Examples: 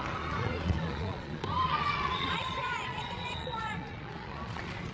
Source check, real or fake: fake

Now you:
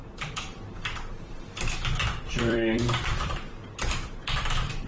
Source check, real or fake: fake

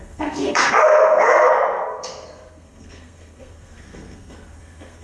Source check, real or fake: fake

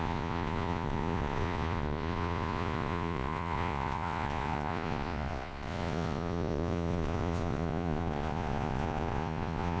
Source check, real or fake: fake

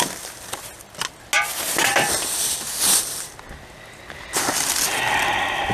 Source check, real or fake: real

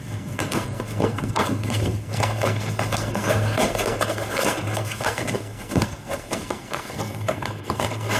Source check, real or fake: fake